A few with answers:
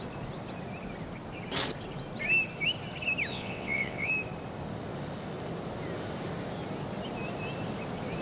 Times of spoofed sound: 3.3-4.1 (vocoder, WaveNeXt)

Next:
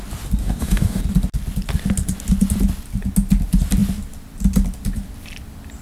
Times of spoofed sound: 0.4-1.0 (codec, DAC)